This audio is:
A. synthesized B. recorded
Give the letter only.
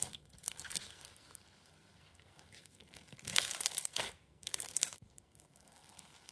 A